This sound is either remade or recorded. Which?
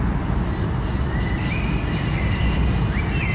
recorded